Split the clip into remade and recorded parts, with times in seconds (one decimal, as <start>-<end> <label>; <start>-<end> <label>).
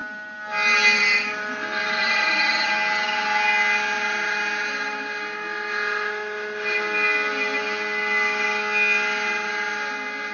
0.0-2.0 recorded; 2.0-2.7 remade; 2.7-10.3 recorded